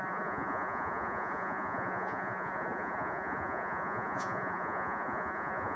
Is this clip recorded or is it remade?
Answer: remade